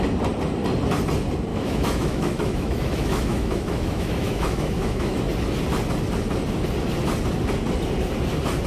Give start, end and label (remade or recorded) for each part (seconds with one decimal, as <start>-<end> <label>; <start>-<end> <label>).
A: 0.0-1.5 recorded; 1.5-5.2 remade; 5.2-8.7 recorded